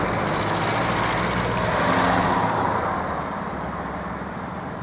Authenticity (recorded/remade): recorded